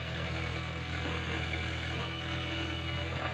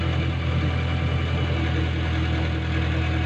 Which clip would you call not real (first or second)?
first